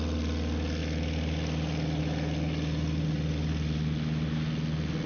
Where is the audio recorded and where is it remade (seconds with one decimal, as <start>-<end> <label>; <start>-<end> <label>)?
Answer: 0.0-5.1 recorded